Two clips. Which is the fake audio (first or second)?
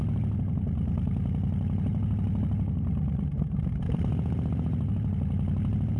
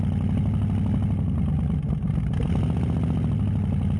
first